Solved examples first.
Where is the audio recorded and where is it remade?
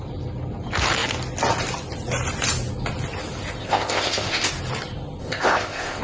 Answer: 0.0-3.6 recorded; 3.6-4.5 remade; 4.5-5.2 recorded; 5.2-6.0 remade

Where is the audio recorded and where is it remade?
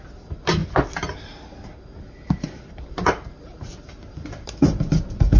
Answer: 0.0-5.4 recorded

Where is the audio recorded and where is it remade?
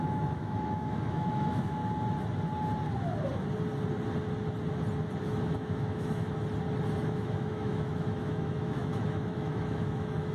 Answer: 0.0-1.8 remade; 1.8-5.2 recorded; 5.2-6.3 remade; 6.3-7.0 recorded; 7.0-10.3 remade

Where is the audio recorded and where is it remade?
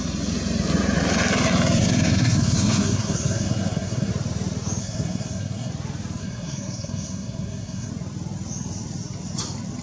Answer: 0.0-1.8 recorded; 1.8-4.1 remade; 4.1-4.8 recorded; 4.8-5.7 remade; 5.7-6.2 recorded; 6.2-7.9 remade; 7.9-9.8 recorded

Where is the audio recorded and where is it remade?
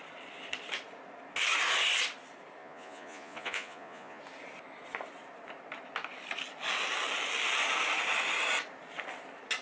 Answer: 0.0-2.6 recorded; 2.6-4.2 remade; 4.2-9.6 recorded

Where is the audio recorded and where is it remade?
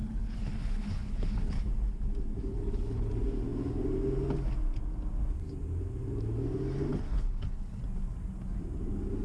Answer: 0.0-1.6 remade; 1.6-2.5 recorded; 2.5-3.1 remade; 3.1-6.9 recorded; 6.9-7.8 remade; 7.8-9.2 recorded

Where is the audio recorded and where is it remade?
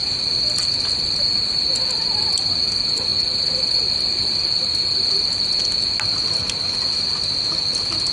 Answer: 0.0-8.1 recorded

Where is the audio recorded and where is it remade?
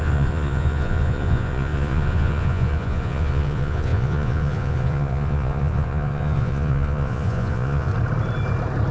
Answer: 0.0-7.9 remade; 7.9-8.9 recorded